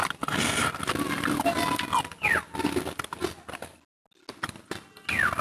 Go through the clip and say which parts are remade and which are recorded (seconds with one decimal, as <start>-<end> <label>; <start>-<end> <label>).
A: 0.0-5.4 recorded